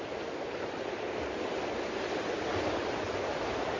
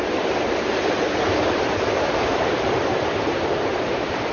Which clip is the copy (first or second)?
second